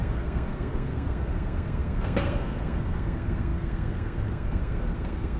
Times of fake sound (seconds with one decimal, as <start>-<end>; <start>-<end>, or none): 0.0-5.4